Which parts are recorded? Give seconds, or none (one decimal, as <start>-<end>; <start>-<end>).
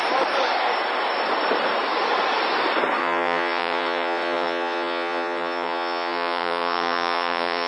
0.0-3.0